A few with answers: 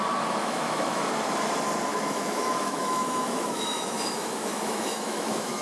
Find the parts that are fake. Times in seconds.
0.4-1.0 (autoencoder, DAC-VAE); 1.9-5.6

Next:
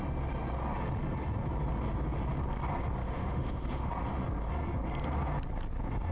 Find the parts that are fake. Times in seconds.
3.0-3.9 (autoencoder, DAC-VAE)

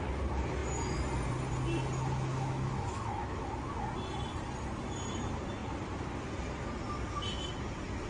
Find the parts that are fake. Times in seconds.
2.3-3.7 (autoencoder, DAC-VAE)

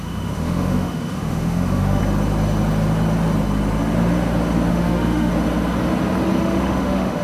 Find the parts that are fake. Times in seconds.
0.0-2.0 (autoencoder, DAC-VAE); 4.7-5.3; 6.4-7.2

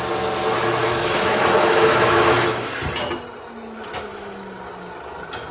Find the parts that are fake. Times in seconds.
0.8-2.7 (autoencoder, DAC-VAE); 4.1-4.6

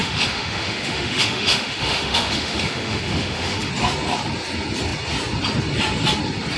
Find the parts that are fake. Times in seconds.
0.0-3.7 (autoencoder, DAC-VAE)

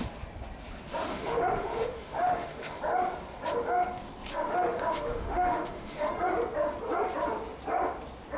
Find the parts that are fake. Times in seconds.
1.1-2.8 (autoencoder, DAC-VAE); 4.3-6.1

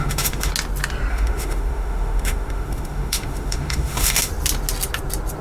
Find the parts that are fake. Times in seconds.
0.0-0.5 (autoencoder, DAC-VAE); 1.1-4.3